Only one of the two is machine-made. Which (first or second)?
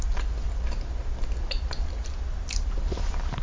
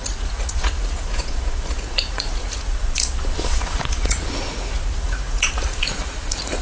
second